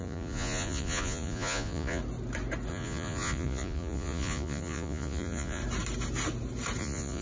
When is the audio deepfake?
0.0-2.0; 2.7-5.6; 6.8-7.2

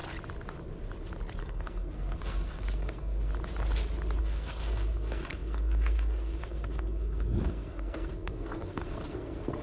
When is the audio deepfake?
1.4-3.3; 4.2-9.6